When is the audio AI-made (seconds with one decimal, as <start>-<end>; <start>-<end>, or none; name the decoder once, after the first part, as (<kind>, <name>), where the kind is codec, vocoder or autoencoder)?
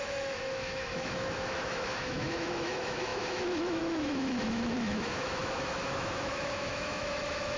0.0-7.6 (autoencoder, DAC-VAE)